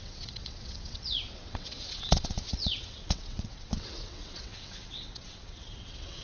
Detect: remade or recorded remade